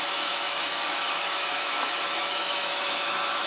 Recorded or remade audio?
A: remade